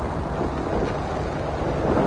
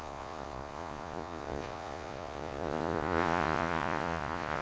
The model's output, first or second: second